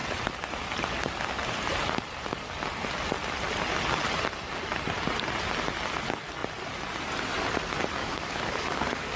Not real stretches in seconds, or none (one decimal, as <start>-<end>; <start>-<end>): 8.0-9.2